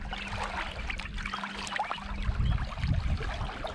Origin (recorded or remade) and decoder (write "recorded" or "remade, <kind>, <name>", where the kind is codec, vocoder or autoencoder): recorded